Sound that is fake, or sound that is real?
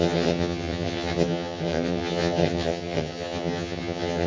fake